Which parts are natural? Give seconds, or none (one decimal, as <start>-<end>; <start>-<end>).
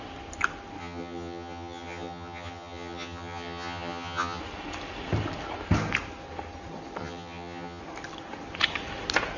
0.0-0.8; 4.4-7.0; 7.8-9.4